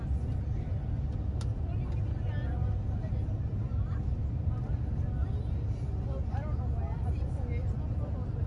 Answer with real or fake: real